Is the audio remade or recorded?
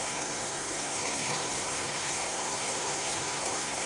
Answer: remade